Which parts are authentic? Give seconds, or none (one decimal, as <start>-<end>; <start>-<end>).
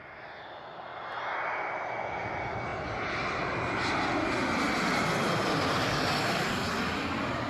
0.0-7.5